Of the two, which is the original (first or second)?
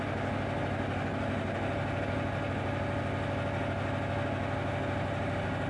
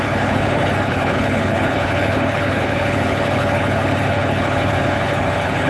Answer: first